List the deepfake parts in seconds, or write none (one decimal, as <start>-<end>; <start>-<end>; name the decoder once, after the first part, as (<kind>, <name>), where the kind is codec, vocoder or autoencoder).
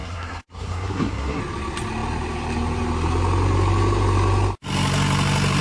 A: 0.0-1.4 (codec, SNAC)